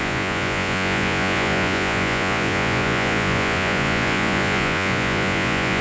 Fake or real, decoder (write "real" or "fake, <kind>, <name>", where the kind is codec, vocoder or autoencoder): fake, vocoder, Vocos